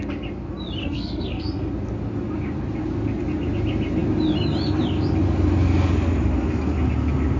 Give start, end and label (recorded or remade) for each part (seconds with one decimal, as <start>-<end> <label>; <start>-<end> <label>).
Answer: 0.0-0.8 recorded; 0.8-1.7 remade; 1.7-7.4 recorded

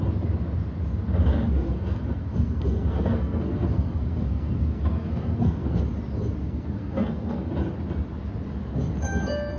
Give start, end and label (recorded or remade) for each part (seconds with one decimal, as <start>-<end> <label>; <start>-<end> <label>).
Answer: 0.0-1.3 recorded; 1.3-5.8 remade; 5.8-6.4 recorded; 6.4-7.5 remade; 7.5-9.6 recorded

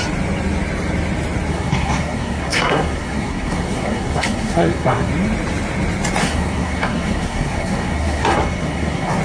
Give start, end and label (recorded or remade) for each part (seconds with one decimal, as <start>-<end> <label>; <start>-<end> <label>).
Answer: 0.0-1.5 recorded; 1.5-5.1 remade; 5.1-6.2 recorded; 6.2-9.2 remade

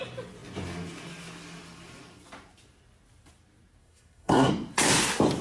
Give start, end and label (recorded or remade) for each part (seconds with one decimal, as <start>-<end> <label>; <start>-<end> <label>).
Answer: 0.0-3.8 recorded; 3.8-4.5 remade; 4.5-5.4 recorded

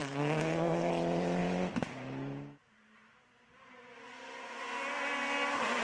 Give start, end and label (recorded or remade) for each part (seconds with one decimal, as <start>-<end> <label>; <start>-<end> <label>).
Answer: 0.0-0.9 remade; 0.9-5.8 recorded

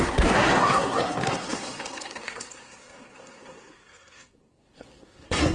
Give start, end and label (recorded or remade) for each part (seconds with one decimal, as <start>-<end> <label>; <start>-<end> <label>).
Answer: 0.0-5.5 remade

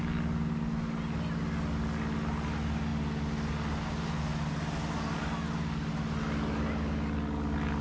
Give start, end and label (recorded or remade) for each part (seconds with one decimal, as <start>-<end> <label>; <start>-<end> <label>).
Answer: 0.0-7.8 recorded